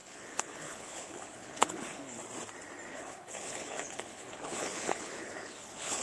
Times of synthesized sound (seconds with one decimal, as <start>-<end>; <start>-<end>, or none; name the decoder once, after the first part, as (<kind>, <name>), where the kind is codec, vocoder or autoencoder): 0.0-2.2 (codec, HILCodec); 2.9-6.0